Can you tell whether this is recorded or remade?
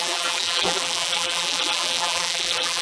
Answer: remade